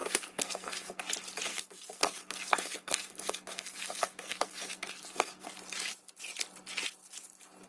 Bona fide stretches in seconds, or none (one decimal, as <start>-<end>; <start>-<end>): 1.0-1.5; 5.5-7.7